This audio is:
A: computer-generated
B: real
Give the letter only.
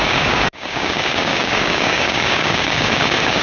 A